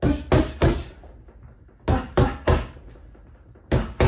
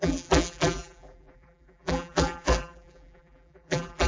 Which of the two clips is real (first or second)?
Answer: first